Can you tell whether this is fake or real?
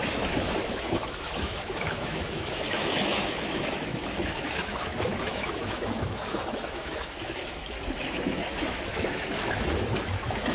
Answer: fake